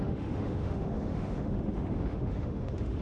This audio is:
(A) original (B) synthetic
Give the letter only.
B